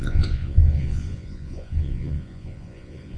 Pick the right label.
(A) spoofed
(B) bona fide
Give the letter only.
A